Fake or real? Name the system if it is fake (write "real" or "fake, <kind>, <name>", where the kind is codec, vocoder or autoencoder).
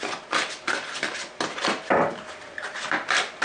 real